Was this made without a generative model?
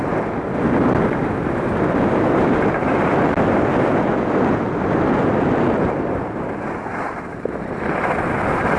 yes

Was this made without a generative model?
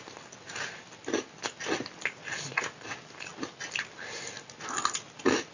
yes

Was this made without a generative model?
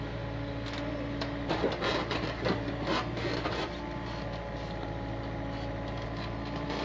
yes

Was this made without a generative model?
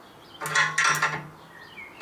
yes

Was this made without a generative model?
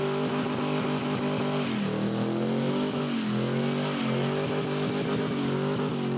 yes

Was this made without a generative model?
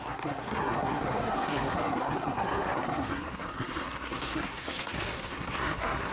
no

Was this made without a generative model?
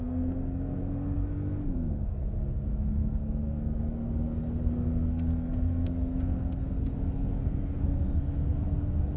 no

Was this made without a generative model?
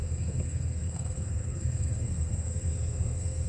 no